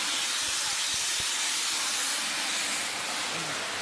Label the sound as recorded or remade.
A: recorded